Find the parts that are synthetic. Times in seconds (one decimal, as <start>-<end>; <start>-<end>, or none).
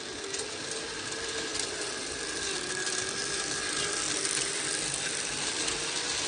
1.5-5.3